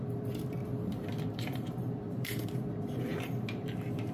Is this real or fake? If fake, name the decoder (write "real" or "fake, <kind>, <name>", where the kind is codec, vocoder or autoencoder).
fake, vocoder, BigVGAN v2